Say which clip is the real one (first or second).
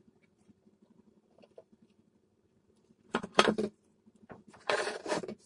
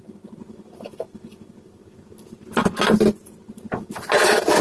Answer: second